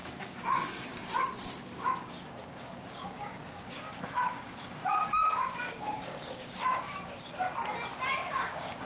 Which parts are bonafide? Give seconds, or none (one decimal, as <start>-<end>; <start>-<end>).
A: 1.3-2.4; 7.3-8.2